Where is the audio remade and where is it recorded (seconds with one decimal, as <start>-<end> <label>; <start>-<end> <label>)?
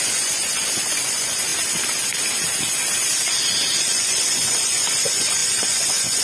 0.0-1.5 remade; 1.5-3.8 recorded; 3.8-6.2 remade